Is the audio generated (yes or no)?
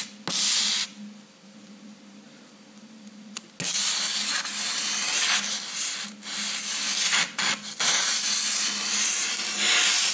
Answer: no